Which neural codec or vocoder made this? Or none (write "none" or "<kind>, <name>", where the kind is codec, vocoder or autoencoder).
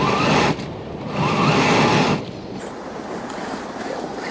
none